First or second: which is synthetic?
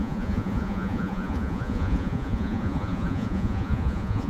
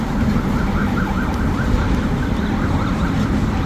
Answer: first